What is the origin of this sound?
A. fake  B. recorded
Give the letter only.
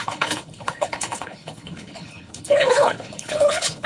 A